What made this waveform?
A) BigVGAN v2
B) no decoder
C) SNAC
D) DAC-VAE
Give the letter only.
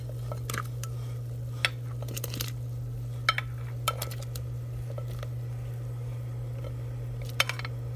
B